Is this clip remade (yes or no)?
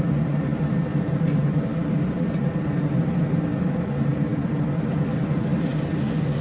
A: no